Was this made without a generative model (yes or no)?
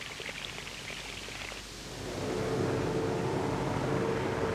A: yes